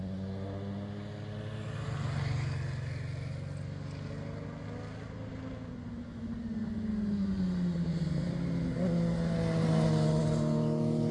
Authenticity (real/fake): real